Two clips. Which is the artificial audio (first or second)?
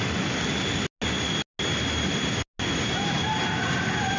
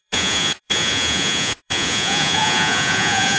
second